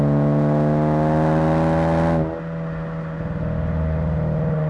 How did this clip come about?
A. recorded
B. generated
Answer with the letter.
A